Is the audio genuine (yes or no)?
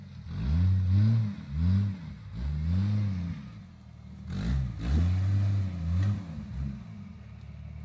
yes